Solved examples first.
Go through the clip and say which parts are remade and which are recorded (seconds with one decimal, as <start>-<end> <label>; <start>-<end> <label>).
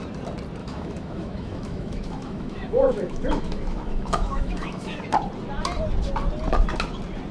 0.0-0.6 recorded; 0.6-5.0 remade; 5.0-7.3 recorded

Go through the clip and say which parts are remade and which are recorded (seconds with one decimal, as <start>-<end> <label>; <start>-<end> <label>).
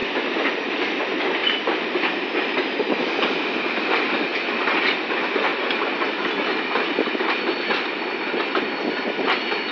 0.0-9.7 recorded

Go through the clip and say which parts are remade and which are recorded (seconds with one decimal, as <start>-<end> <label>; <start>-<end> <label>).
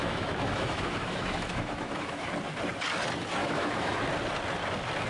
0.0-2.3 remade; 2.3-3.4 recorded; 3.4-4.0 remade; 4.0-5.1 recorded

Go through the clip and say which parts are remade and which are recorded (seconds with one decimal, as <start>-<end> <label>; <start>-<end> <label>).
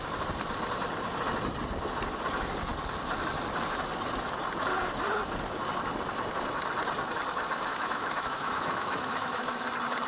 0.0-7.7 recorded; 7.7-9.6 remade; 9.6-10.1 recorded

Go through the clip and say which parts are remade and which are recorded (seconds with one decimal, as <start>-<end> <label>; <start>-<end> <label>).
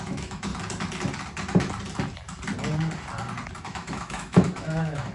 0.0-0.5 remade; 0.5-3.6 recorded; 3.6-5.1 remade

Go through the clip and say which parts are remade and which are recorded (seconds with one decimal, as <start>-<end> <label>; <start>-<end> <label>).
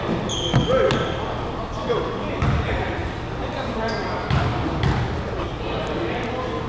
0.0-6.7 recorded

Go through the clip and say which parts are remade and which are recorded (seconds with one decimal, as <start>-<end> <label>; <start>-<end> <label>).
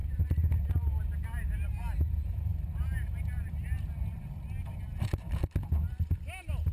0.0-6.7 recorded